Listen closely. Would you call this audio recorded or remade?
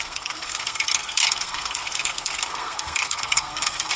remade